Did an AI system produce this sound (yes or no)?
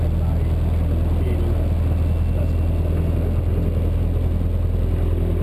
no